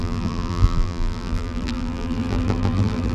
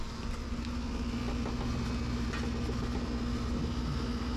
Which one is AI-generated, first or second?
first